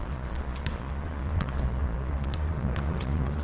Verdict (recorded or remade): remade